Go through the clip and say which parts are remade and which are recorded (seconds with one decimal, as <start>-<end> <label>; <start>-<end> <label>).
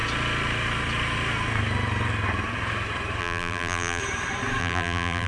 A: 0.0-3.2 recorded; 3.2-4.0 remade; 4.0-4.6 recorded; 4.6-5.3 remade